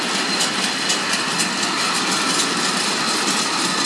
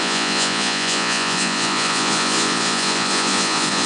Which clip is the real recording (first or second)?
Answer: first